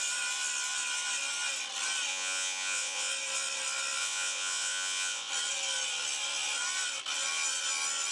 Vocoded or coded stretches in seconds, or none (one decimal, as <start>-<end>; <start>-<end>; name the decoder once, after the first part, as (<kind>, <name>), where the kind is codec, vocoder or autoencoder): 2.1-3.1 (vocoder, Vocos); 4.0-5.3